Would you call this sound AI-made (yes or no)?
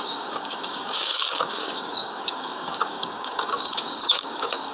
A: yes